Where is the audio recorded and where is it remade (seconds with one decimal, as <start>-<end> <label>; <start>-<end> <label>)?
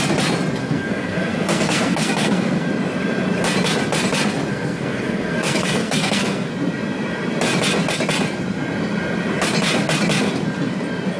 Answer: 0.0-0.6 recorded; 0.6-2.7 remade; 2.7-4.5 recorded; 4.5-6.5 remade; 6.5-11.2 recorded